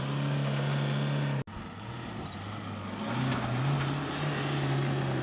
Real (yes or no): yes